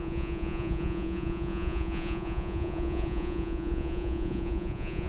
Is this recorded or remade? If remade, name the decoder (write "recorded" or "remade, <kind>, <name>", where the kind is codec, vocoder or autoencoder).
remade, vocoder, Vocos